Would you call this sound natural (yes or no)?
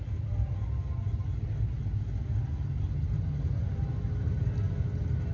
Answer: yes